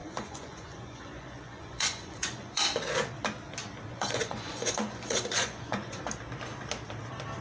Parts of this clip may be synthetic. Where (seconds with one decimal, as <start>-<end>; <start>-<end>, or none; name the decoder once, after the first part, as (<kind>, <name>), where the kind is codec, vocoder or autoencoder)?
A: 0.0-2.6 (vocoder, Vocos); 3.9-6.0